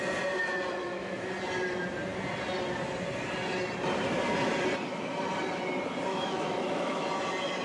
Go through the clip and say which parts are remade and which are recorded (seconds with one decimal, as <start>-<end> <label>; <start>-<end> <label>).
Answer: 0.0-0.8 recorded; 0.8-1.3 remade; 1.3-6.1 recorded; 6.1-7.1 remade; 7.1-7.6 recorded